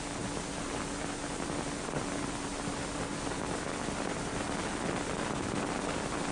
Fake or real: real